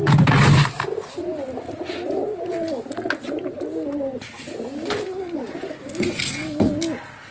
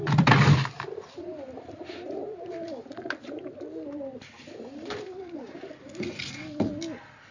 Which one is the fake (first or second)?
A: second